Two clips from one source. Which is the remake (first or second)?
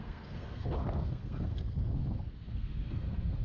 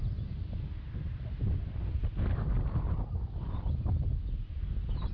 first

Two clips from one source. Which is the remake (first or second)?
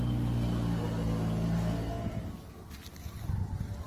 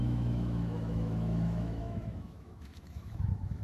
second